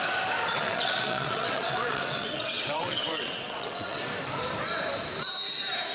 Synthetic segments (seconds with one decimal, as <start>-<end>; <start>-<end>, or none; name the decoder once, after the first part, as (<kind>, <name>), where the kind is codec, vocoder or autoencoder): 0.5-4.0 (vocoder, WaveNeXt)